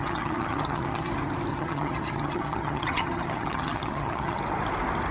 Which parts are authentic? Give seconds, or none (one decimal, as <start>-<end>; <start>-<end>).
1.1-1.5; 4.4-5.1